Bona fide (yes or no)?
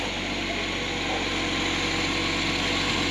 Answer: yes